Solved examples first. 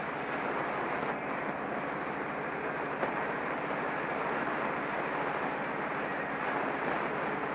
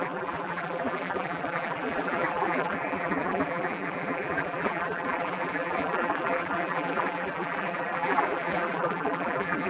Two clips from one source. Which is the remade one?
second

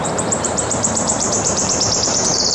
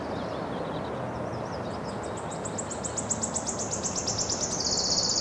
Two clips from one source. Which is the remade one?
first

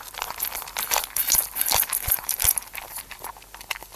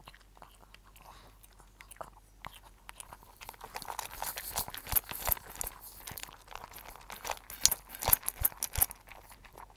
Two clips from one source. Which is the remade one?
first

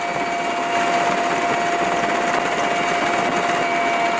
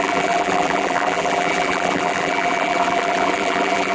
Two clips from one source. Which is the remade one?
second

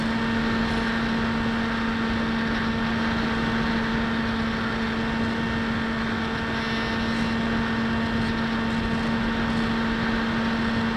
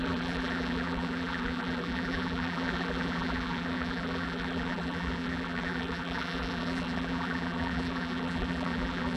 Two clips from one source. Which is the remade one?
second